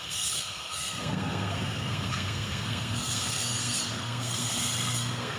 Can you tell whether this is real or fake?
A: fake